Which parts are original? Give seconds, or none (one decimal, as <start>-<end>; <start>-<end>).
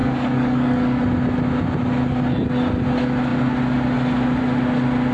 1.0-5.1